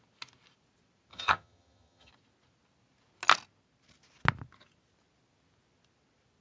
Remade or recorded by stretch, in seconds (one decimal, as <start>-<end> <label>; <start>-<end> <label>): 0.0-1.1 recorded; 1.1-2.1 remade; 2.1-6.4 recorded